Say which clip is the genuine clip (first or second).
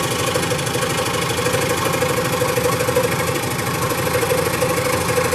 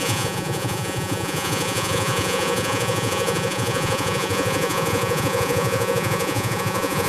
first